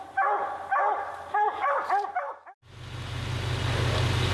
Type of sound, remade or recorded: recorded